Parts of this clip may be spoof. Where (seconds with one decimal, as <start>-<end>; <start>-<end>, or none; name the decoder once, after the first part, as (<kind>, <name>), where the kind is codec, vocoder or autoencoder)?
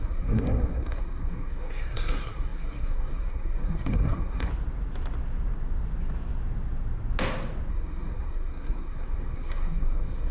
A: 0.0-4.5 (codec, SNAC); 7.7-10.3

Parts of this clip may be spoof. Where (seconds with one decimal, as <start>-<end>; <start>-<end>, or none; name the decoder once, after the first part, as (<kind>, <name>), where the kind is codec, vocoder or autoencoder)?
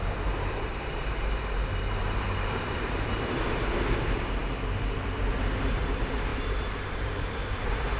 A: 0.0-4.4 (vocoder, BigVGAN v2); 5.7-8.0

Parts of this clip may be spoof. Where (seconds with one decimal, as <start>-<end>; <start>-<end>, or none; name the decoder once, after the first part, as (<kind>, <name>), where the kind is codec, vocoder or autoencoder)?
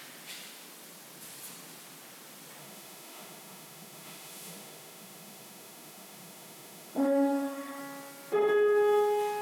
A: 2.6-7.8 (autoencoder, DAC-VAE)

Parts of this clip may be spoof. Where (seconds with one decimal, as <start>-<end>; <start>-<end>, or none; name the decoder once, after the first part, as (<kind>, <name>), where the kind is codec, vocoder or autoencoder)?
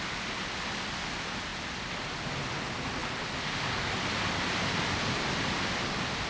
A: none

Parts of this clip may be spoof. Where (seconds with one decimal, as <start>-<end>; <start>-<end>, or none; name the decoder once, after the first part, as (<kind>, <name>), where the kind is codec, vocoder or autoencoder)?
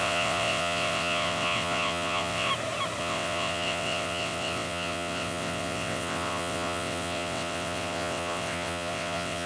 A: 0.0-2.5 (vocoder, WaveNeXt); 3.0-9.5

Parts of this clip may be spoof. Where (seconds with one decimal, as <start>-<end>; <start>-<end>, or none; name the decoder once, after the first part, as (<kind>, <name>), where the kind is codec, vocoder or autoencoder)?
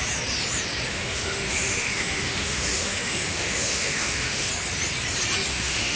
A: 0.9-4.5 (autoencoder, DAC-VAE); 5.5-6.0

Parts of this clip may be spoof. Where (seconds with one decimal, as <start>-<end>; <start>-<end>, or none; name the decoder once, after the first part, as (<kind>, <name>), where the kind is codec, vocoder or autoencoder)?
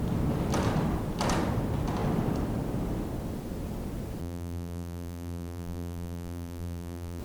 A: 4.2-7.2 (vocoder, BigVGAN v2)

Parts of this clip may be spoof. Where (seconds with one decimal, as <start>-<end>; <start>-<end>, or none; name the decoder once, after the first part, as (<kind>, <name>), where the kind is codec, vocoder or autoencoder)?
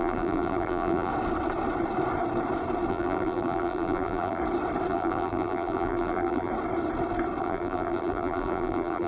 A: 0.0-1.1 (vocoder, BigVGAN v2); 2.9-4.4; 4.9-6.5; 7.4-9.1